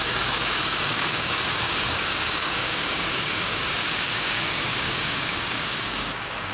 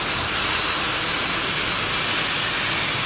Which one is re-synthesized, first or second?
first